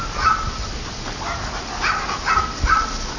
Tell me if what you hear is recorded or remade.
recorded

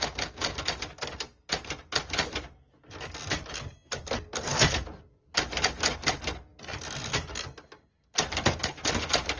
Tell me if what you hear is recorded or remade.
recorded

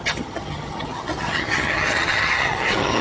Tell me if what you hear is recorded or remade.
remade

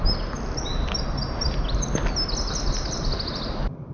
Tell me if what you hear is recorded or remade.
recorded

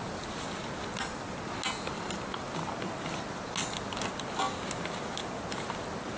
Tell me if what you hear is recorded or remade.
recorded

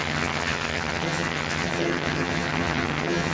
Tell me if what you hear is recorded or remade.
remade